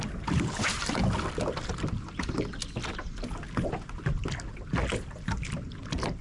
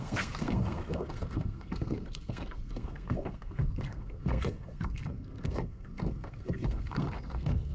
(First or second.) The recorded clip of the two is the first